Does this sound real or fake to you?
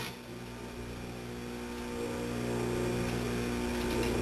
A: real